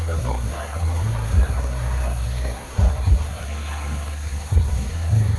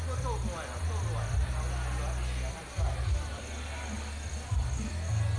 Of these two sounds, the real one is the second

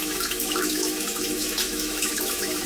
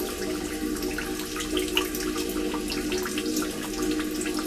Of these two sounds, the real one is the second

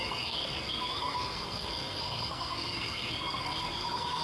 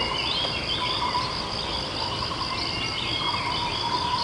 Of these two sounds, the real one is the second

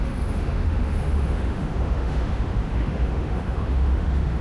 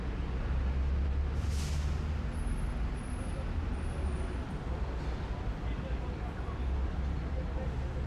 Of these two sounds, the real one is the second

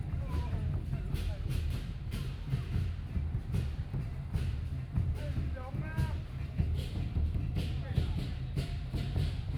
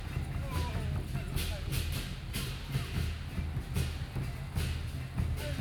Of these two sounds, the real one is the second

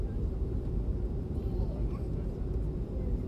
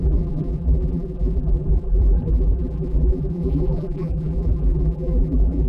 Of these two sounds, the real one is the first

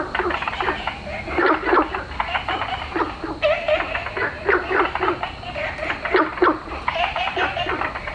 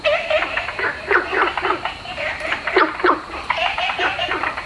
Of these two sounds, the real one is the first